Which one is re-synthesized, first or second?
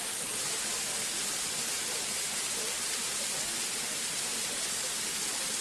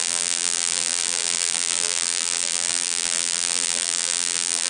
second